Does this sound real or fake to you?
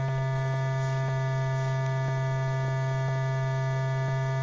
real